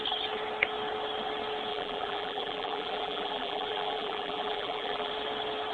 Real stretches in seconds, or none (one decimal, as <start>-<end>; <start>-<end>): 0.0-1.7; 5.1-5.7